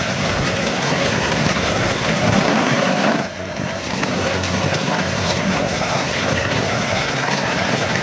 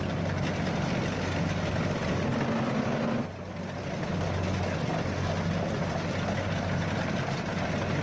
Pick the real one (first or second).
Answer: second